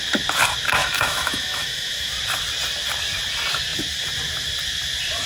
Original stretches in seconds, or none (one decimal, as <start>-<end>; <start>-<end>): 0.0-0.8; 2.1-5.3